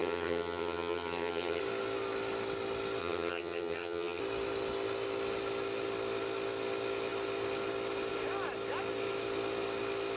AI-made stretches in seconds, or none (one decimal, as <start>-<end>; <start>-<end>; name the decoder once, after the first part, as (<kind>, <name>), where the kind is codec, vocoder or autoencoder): 0.0-1.6 (vocoder, HiFi-GAN); 3.0-4.2